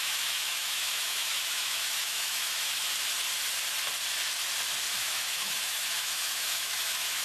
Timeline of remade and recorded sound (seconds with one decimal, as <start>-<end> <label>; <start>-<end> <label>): 0.0-2.8 remade; 2.8-5.0 recorded; 5.0-7.2 remade